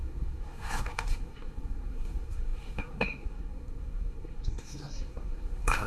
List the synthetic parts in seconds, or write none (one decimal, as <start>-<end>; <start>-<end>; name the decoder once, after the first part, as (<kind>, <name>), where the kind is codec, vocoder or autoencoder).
0.0-5.9 (codec, SNAC)

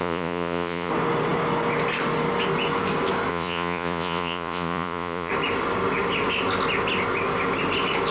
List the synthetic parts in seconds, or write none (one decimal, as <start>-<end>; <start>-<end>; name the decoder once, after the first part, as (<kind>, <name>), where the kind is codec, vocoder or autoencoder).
0.0-0.9 (vocoder, Vocos); 3.3-5.3

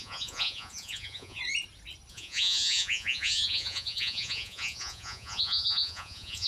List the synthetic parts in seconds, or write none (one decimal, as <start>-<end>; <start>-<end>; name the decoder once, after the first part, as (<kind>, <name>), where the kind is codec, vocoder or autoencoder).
0.0-1.4 (vocoder, Vocos); 2.1-6.5

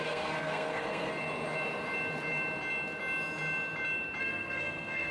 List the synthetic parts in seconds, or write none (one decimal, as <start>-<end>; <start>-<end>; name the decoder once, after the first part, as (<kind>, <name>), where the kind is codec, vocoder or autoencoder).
0.0-1.1 (codec, SNAC); 4.2-5.1

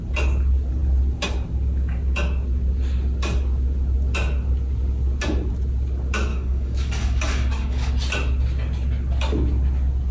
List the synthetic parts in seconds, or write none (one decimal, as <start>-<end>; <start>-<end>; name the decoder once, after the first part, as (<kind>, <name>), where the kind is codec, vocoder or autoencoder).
6.3-7.9 (codec, DAC)

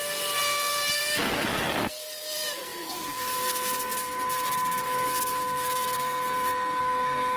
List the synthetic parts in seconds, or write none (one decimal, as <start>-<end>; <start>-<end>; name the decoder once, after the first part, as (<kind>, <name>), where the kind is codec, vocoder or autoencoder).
0.0-7.4 (codec, SNAC)

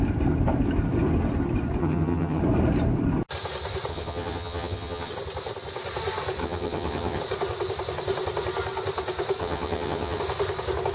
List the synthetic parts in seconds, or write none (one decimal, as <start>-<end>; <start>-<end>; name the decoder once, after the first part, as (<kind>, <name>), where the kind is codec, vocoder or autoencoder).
1.8-2.4 (vocoder, HiFi-GAN); 3.9-5.1; 6.4-7.2; 9.4-10.2